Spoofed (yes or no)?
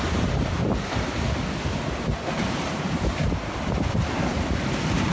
no